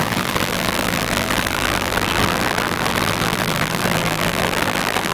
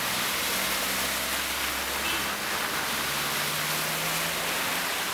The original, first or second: second